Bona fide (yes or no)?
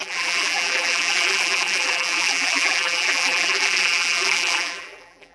no